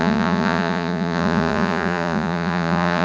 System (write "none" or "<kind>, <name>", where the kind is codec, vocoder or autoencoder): vocoder, Vocos